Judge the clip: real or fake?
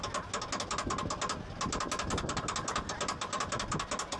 real